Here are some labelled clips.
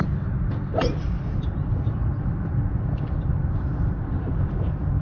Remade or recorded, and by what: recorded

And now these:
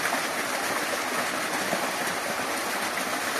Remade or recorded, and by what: recorded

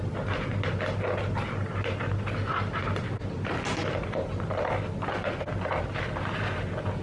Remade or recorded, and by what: recorded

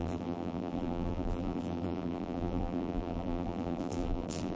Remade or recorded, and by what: remade, vocoder, BigVGAN v2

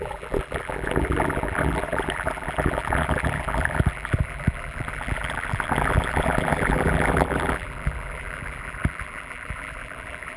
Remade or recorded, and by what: remade, vocoder, BigVGAN v2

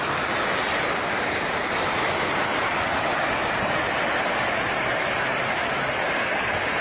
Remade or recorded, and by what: remade, vocoder, BigVGAN v2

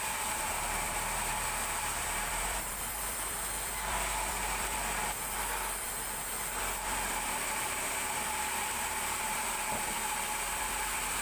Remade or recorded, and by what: remade, vocoder, BigVGAN v2